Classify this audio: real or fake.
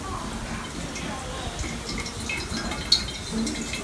real